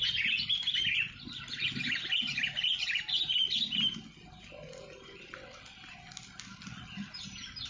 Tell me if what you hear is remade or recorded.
recorded